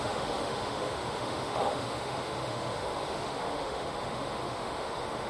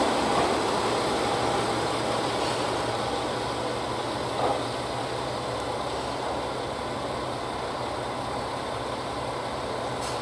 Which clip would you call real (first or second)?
second